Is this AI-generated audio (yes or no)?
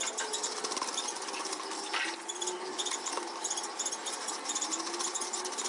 yes